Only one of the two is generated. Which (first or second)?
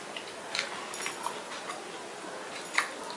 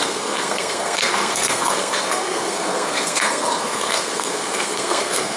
second